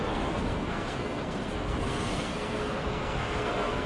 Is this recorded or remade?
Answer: remade